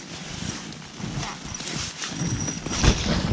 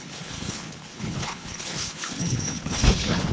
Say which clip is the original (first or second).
first